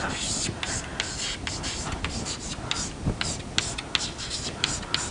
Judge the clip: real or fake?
real